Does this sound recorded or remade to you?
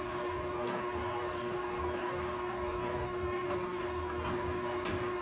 remade